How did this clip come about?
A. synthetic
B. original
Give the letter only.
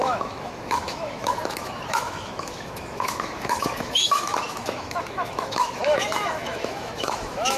A